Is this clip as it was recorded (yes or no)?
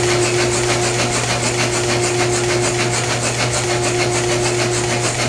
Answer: yes